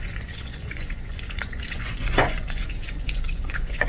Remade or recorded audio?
remade